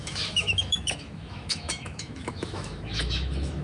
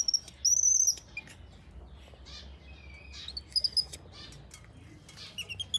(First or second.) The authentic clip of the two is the second